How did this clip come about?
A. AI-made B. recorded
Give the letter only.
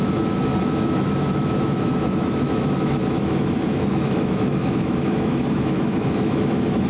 A